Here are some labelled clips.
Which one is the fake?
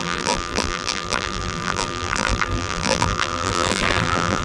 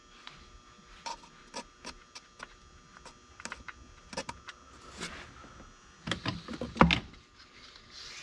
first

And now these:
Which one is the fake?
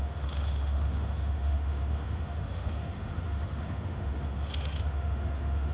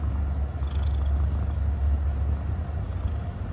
first